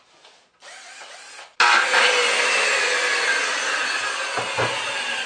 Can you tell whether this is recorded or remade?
recorded